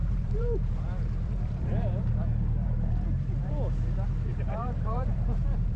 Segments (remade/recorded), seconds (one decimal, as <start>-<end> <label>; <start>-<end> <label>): 0.0-3.5 remade; 3.5-4.3 recorded; 4.3-5.8 remade

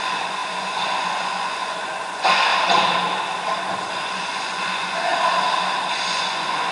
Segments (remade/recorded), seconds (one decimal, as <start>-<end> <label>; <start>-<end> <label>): 0.0-2.5 remade; 2.5-3.9 recorded; 3.9-5.1 remade; 5.1-5.9 recorded; 5.9-6.7 remade

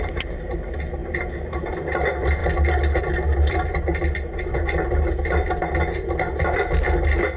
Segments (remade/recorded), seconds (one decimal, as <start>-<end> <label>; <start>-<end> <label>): 0.0-7.4 recorded

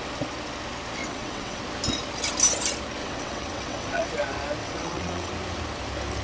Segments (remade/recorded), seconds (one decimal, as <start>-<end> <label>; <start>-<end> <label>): 0.0-1.0 recorded; 1.0-1.6 remade; 1.6-3.0 recorded; 3.0-4.1 remade; 4.1-4.6 recorded; 4.6-5.3 remade; 5.3-6.2 recorded

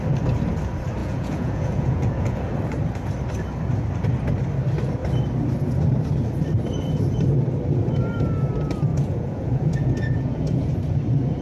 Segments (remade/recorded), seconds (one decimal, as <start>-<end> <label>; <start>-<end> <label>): 0.0-1.0 recorded; 1.0-2.5 remade; 2.5-8.9 recorded; 8.9-10.7 remade; 10.7-11.4 recorded